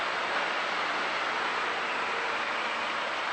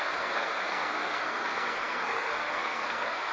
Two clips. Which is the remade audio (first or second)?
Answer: second